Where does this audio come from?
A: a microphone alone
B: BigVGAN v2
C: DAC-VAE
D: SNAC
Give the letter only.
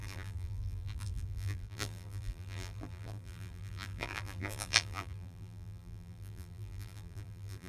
B